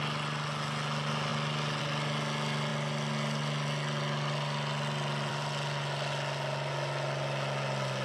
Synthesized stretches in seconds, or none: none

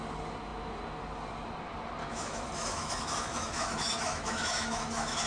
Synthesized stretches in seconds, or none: 2.0-5.3 (autoencoder, DAC-VAE)